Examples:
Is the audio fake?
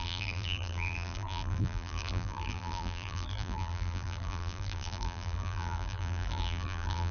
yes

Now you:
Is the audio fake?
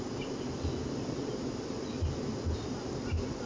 no